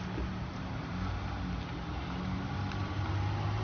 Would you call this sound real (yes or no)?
yes